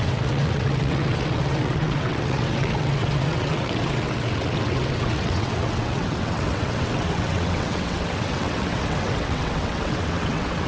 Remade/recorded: remade